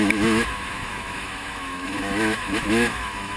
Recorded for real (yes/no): no